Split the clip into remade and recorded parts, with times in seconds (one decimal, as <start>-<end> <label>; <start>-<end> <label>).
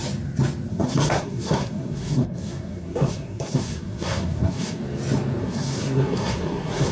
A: 0.0-0.7 recorded; 0.7-4.8 remade; 4.8-5.4 recorded; 5.4-6.9 remade